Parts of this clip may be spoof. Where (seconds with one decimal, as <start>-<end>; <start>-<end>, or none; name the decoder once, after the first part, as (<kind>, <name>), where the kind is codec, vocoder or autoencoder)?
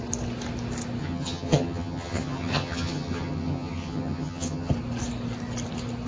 1.0-4.7 (vocoder, HiFi-GAN)